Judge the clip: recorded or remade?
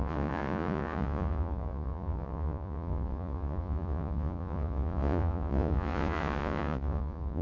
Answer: remade